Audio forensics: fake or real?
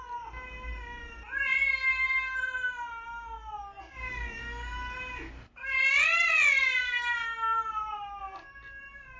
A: real